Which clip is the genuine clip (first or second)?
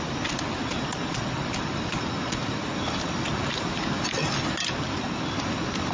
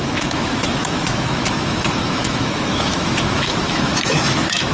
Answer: first